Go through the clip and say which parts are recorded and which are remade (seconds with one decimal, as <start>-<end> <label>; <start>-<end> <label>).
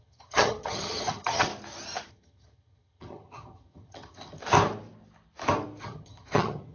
0.0-1.5 remade; 1.5-2.1 recorded; 2.1-4.4 remade; 4.4-5.8 recorded; 5.8-6.7 remade